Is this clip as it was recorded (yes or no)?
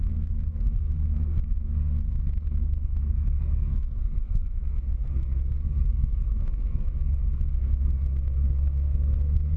no